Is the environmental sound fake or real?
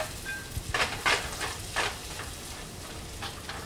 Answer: real